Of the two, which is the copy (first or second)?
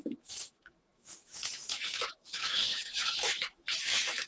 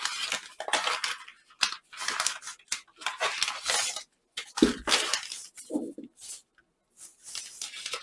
first